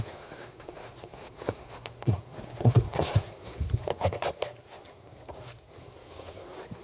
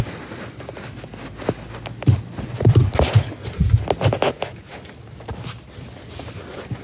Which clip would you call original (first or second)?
second